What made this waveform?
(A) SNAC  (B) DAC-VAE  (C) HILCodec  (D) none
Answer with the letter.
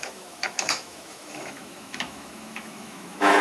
B